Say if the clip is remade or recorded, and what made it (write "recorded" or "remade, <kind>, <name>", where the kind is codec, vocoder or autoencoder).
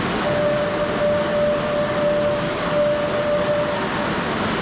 recorded